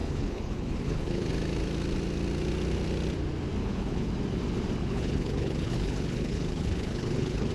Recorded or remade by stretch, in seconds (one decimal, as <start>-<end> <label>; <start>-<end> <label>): 0.0-1.3 remade; 1.3-3.6 recorded; 3.6-4.1 remade; 4.1-4.8 recorded; 4.8-7.5 remade

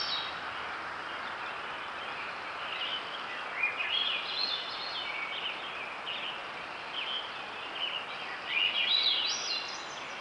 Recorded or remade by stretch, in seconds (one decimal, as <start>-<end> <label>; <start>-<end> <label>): 0.0-10.2 recorded

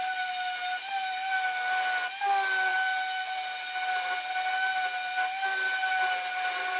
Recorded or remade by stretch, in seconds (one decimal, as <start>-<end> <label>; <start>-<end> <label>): 0.0-6.8 recorded

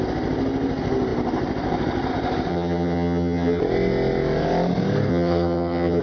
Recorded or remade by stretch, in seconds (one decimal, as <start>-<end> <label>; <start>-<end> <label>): 0.0-2.5 recorded; 2.5-3.6 remade; 3.6-5.1 recorded; 5.1-6.0 remade

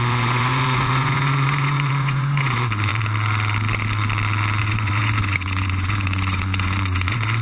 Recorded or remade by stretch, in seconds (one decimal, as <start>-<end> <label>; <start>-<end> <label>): 0.0-2.9 remade; 2.9-4.6 recorded; 4.6-7.4 remade

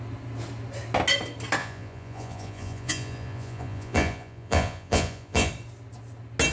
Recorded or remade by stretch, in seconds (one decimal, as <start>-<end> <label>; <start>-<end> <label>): 0.0-1.6 recorded; 1.6-5.5 remade; 5.5-6.5 recorded

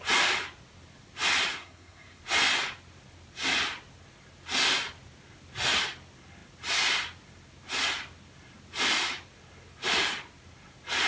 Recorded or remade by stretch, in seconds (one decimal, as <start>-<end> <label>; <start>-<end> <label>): 0.0-1.5 recorded; 1.5-2.2 remade; 2.2-11.1 recorded